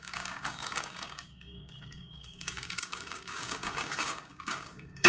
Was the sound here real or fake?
fake